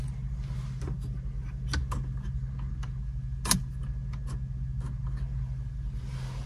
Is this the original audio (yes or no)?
yes